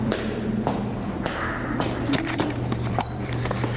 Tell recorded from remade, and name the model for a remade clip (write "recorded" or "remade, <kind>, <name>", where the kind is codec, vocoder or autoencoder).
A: remade, vocoder, BigVGAN v2